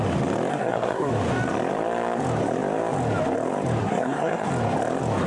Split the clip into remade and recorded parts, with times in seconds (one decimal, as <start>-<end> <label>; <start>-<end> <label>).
0.0-0.5 recorded; 0.5-1.1 remade; 1.1-3.8 recorded; 3.8-4.5 remade; 4.5-5.3 recorded